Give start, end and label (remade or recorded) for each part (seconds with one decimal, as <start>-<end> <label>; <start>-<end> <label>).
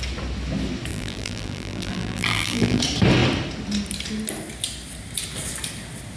0.0-0.9 recorded; 0.9-2.8 remade; 2.8-6.2 recorded